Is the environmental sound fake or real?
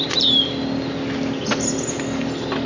real